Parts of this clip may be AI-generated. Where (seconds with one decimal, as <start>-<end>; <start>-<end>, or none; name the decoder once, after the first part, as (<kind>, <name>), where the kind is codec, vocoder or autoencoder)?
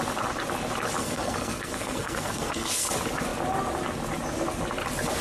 1.0-2.9 (codec, SNAC)